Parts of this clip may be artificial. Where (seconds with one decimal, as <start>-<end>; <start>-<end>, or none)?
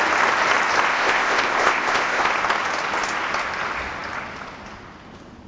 0.9-2.3